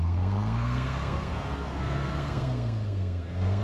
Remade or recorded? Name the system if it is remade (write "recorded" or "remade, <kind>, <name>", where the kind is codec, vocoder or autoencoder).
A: remade, codec, SNAC